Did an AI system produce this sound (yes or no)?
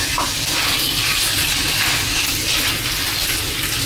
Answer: no